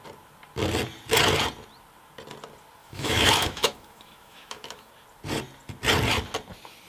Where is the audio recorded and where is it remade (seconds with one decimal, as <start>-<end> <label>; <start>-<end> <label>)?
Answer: 0.0-2.8 recorded; 2.8-4.9 remade; 4.9-6.9 recorded